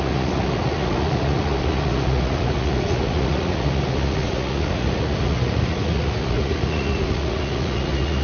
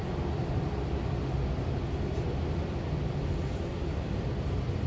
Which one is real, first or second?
second